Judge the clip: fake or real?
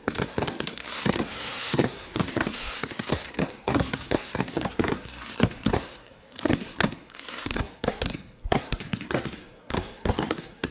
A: fake